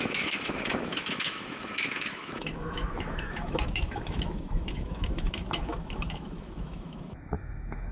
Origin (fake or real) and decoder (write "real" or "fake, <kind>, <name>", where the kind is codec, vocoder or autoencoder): fake, autoencoder, DAC-VAE